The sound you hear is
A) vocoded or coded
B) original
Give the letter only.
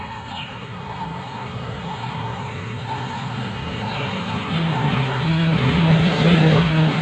A